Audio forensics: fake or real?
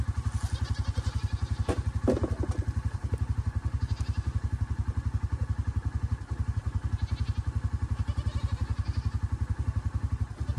real